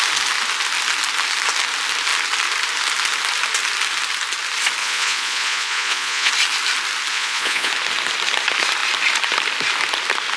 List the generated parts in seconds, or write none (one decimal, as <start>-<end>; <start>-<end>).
4.8-6.3; 7.1-7.7

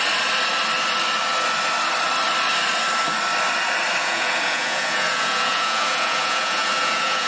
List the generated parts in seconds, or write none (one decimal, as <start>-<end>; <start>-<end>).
4.0-7.3

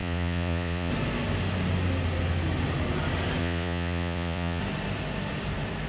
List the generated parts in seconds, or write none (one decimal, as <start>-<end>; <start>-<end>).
0.0-0.9; 3.4-4.6

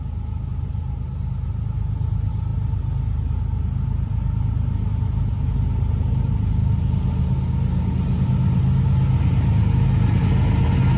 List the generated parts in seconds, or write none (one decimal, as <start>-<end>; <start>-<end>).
none